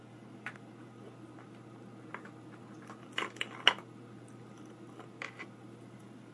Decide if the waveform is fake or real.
real